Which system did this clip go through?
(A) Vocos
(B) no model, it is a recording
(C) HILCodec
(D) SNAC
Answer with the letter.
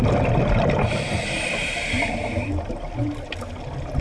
B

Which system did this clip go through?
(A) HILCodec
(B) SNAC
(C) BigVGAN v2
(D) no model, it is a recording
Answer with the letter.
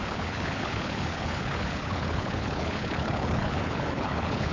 A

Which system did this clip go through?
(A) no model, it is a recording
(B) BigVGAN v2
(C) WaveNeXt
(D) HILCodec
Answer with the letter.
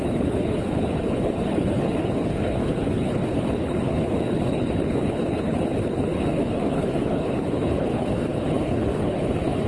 D